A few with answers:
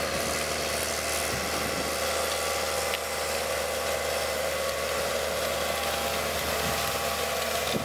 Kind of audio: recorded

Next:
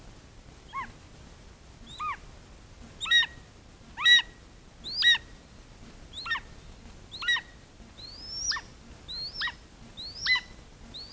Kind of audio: recorded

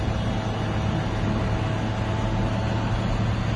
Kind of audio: recorded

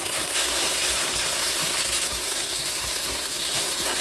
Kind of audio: remade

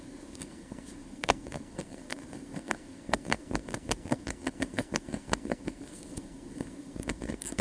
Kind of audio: remade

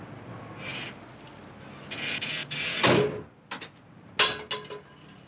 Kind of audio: recorded